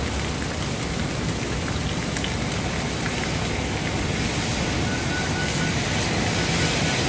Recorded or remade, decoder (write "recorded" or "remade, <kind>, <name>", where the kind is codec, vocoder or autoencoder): recorded